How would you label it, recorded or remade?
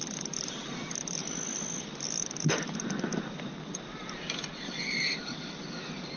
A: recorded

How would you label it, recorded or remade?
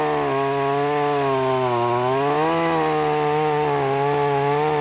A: recorded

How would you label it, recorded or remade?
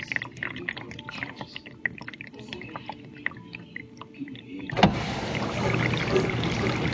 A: recorded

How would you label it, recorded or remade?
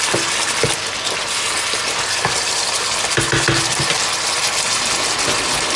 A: recorded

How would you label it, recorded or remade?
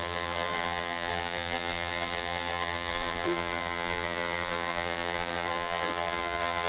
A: remade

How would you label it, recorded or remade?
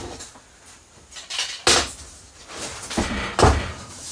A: recorded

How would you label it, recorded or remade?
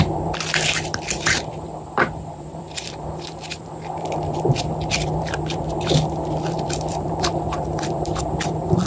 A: remade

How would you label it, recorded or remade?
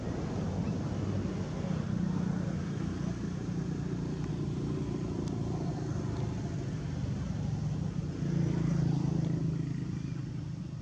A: recorded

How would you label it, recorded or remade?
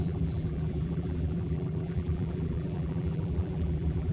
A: remade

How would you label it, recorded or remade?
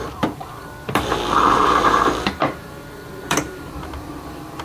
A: remade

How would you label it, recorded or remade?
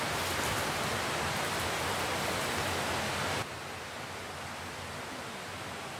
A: recorded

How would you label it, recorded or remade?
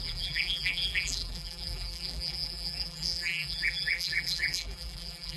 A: remade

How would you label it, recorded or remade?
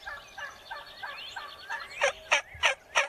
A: recorded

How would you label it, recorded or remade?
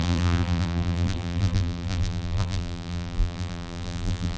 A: remade